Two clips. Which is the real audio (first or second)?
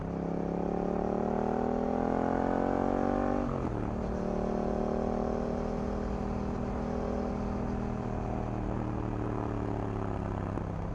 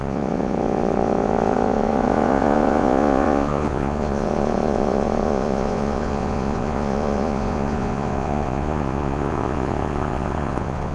first